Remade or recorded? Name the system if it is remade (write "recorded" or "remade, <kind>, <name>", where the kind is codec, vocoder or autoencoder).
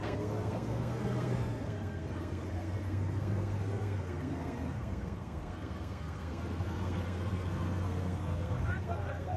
remade, codec, SNAC